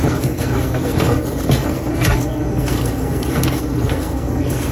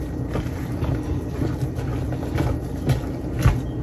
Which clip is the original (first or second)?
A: second